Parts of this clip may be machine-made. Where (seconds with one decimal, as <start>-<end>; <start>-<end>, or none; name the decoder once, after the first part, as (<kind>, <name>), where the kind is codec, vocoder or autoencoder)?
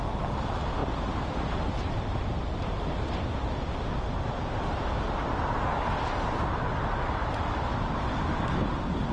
0.8-3.3 (vocoder, BigVGAN v2); 5.7-8.1